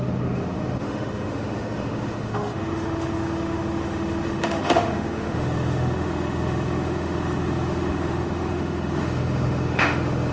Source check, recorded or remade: remade